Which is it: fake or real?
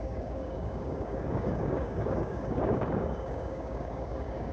fake